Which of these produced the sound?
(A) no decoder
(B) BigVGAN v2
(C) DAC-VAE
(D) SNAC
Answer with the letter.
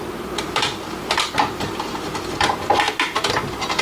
A